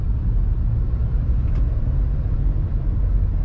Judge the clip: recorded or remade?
recorded